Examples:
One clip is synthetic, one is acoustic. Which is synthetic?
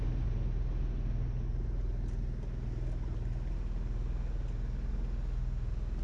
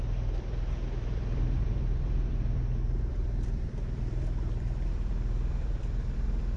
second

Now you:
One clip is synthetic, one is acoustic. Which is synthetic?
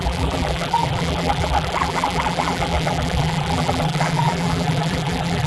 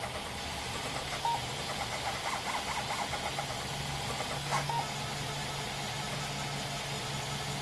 first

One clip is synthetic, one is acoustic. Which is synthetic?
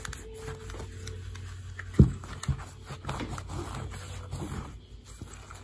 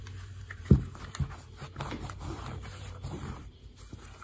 second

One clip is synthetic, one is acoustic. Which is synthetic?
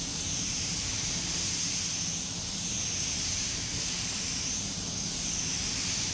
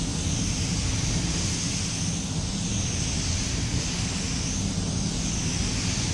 first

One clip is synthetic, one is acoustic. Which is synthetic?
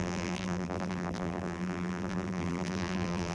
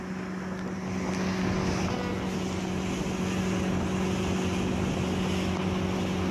first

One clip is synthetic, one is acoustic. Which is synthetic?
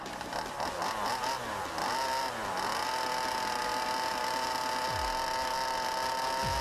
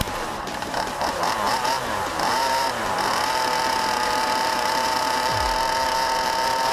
second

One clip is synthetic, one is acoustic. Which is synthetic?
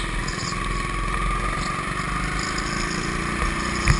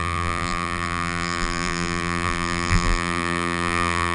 second